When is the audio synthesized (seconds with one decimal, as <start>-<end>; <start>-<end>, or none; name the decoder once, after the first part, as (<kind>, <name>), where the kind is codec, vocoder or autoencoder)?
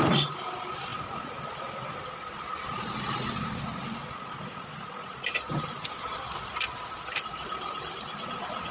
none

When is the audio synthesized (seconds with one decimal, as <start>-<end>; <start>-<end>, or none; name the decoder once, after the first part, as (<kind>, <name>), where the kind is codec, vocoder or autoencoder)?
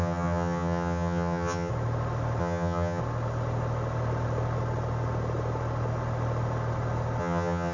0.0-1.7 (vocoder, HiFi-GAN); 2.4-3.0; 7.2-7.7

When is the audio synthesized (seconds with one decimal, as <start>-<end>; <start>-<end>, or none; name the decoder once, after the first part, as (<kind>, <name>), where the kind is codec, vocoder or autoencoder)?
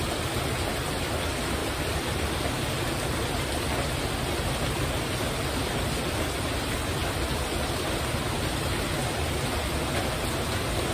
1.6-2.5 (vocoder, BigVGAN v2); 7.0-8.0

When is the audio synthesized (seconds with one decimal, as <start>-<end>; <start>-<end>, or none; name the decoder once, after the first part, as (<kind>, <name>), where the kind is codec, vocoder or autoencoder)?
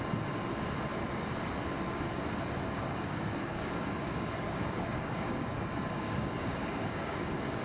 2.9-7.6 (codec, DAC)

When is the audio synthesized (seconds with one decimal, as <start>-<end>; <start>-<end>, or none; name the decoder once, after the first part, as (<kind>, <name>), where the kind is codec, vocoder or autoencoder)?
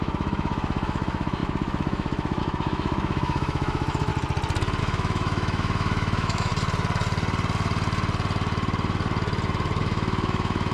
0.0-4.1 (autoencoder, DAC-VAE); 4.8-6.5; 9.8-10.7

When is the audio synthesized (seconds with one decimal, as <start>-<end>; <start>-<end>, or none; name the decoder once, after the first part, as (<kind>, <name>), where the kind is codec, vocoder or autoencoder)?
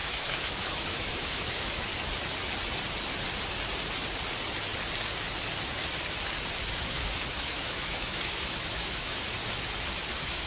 0.0-1.9 (autoencoder, DAC-VAE); 6.7-9.4; 10.1-10.5